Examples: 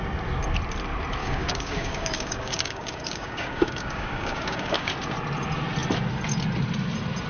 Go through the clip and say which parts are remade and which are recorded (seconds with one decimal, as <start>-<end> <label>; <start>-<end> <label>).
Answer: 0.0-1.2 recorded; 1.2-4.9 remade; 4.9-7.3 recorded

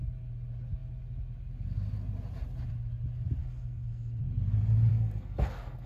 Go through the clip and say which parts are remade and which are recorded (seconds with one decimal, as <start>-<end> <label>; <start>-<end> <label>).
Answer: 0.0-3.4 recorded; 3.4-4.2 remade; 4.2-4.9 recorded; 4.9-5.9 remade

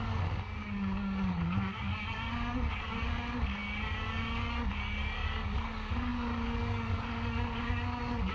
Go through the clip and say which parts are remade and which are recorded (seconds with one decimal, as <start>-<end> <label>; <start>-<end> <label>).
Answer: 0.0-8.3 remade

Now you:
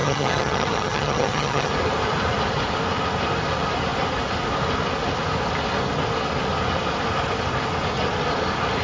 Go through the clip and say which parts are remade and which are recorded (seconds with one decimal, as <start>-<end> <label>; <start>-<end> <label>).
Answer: 0.0-1.7 remade; 1.7-8.8 recorded

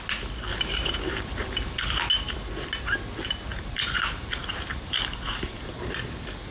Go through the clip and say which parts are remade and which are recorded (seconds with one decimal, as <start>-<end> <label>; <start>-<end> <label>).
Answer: 0.0-0.5 recorded; 0.5-2.0 remade; 2.0-3.5 recorded; 3.5-5.7 remade; 5.7-6.5 recorded

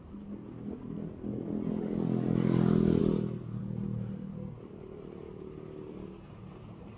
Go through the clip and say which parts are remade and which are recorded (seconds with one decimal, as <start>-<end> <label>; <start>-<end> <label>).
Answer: 0.0-7.0 recorded

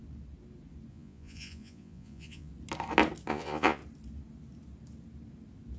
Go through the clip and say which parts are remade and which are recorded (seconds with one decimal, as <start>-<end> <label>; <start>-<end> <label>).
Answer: 0.0-0.9 recorded; 0.9-2.5 remade; 2.5-3.3 recorded; 3.3-3.8 remade; 3.8-5.8 recorded

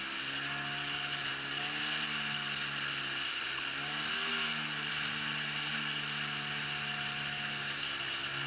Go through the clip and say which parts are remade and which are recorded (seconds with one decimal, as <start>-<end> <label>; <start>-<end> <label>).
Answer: 0.0-8.5 recorded